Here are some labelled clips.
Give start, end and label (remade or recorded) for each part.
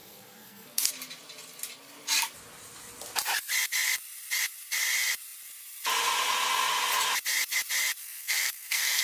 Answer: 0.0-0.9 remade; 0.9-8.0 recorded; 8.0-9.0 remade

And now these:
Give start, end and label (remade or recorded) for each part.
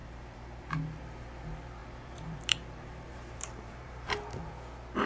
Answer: 0.0-1.4 remade; 1.4-1.8 recorded; 1.8-4.5 remade; 4.5-5.1 recorded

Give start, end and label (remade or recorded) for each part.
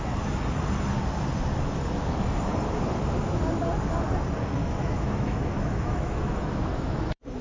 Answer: 0.0-4.6 recorded; 4.6-7.0 remade; 7.0-7.4 recorded